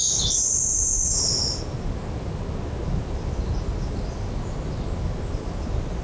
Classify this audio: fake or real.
real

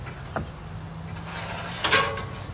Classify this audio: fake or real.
real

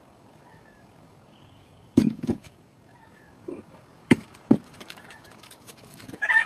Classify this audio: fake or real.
fake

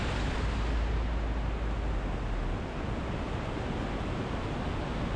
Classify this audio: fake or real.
real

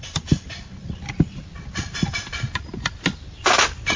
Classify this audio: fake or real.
real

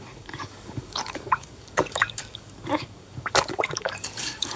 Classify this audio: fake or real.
fake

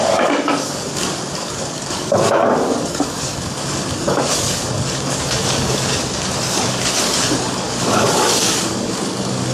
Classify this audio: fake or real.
fake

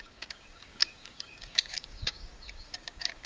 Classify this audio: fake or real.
fake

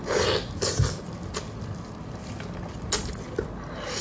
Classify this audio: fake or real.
real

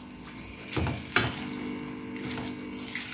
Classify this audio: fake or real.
real